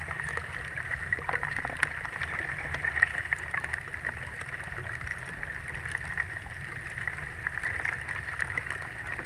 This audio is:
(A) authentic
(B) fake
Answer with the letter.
A